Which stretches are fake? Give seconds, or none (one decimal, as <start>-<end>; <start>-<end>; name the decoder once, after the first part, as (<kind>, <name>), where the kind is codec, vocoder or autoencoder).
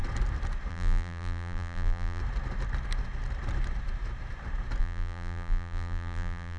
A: 0.7-2.2 (vocoder, BigVGAN v2); 4.8-6.6